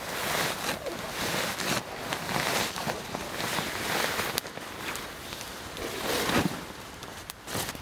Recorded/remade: recorded